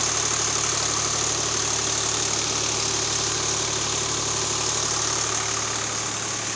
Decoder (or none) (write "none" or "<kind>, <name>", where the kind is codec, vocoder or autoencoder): none